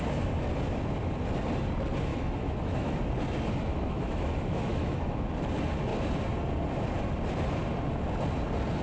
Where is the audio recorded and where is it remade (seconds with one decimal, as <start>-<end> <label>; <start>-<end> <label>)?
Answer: 0.0-2.1 recorded; 2.1-3.0 remade; 3.0-3.7 recorded; 3.7-5.3 remade; 5.3-8.8 recorded